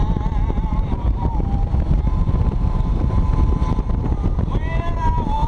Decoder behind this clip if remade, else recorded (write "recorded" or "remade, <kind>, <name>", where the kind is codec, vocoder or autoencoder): remade, vocoder, BigVGAN v2